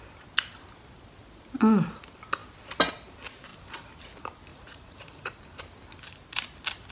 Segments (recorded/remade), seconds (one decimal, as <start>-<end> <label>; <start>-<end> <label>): 0.0-4.5 recorded; 4.5-5.4 remade; 5.4-6.9 recorded

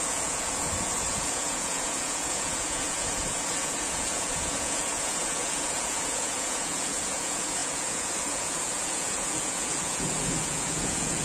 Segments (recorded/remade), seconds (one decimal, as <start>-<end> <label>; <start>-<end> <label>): 0.0-11.2 remade

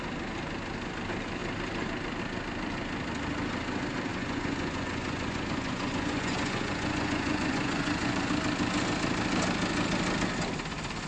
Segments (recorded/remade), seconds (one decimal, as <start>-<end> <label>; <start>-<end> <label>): 0.0-4.1 recorded; 4.1-8.3 remade; 8.3-11.1 recorded

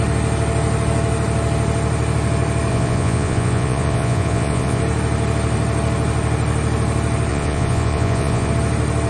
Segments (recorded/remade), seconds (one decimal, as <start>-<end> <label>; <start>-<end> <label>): 0.0-2.7 recorded; 2.7-4.8 remade; 4.8-7.3 recorded; 7.3-8.5 remade; 8.5-9.1 recorded

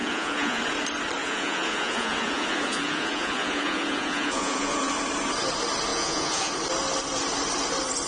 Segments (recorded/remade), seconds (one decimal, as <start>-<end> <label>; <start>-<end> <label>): 0.0-0.6 remade; 0.6-1.2 recorded; 1.2-4.9 remade; 4.9-5.9 recorded; 5.9-6.5 remade; 6.5-8.1 recorded